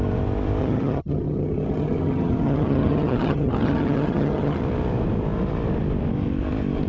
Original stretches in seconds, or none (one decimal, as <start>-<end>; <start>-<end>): 0.0-0.6; 4.6-6.9